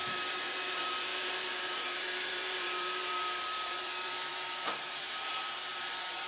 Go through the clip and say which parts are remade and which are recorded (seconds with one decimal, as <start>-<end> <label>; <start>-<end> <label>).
0.0-6.3 remade